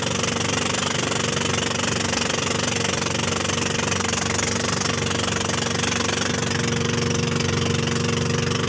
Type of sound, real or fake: real